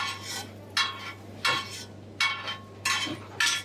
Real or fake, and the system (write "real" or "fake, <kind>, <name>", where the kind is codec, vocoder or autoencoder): real